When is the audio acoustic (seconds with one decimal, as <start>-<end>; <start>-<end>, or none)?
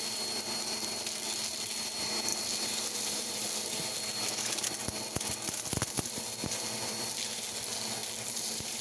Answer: 0.0-8.8